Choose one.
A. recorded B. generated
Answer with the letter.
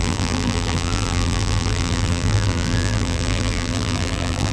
B